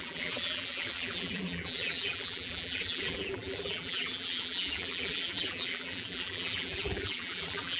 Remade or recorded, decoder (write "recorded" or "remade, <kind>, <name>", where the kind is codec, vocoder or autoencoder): remade, vocoder, BigVGAN v2